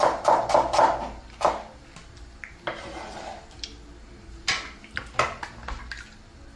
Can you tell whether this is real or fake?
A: real